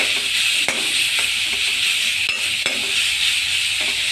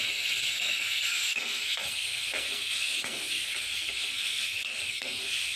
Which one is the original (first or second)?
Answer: first